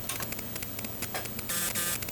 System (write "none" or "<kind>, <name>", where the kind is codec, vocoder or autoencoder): none